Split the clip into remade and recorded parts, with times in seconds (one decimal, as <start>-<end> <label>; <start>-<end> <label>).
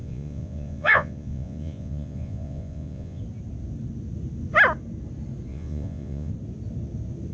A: 0.0-3.2 remade; 3.2-5.5 recorded; 5.5-6.3 remade; 6.3-7.3 recorded